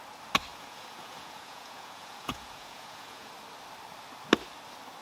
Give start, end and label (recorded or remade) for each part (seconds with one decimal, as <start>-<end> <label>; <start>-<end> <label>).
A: 0.0-0.5 recorded; 0.5-3.3 remade; 3.3-5.0 recorded